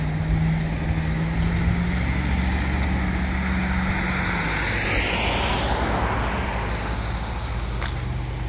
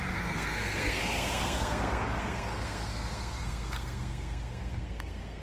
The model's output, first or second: second